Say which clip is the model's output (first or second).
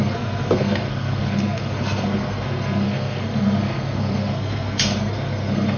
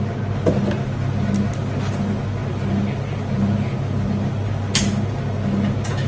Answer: first